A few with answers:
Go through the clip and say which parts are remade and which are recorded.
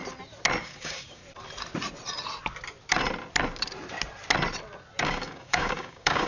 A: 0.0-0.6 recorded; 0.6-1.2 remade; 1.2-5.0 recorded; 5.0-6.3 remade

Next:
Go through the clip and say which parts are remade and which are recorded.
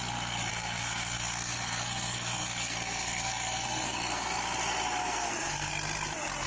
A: 0.0-0.5 recorded; 0.5-4.3 remade; 4.3-5.0 recorded; 5.0-5.7 remade; 5.7-6.5 recorded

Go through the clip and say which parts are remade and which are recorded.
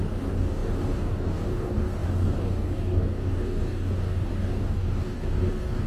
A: 0.0-5.9 remade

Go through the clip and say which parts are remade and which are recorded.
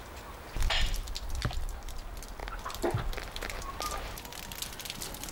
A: 0.0-5.3 recorded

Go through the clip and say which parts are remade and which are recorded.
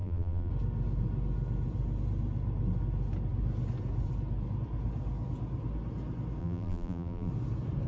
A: 0.0-0.5 remade; 0.5-6.4 recorded; 6.4-7.3 remade; 7.3-7.9 recorded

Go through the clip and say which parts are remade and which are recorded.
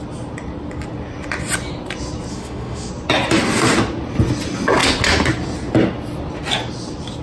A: 0.0-2.3 recorded; 2.3-2.9 remade; 2.9-7.2 recorded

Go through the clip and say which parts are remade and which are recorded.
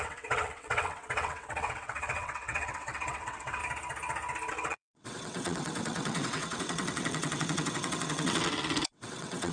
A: 0.0-3.6 remade; 3.6-4.5 recorded; 4.5-9.5 remade